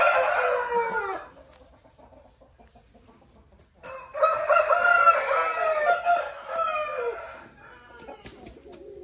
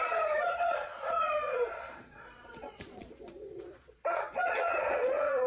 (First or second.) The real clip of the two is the first